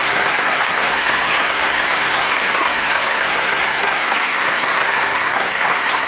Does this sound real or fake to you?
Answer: fake